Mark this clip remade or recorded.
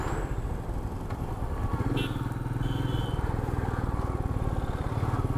recorded